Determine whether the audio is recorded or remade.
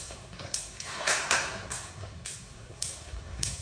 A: remade